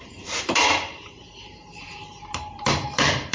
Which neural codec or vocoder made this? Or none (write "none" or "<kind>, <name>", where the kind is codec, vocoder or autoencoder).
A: vocoder, BigVGAN v2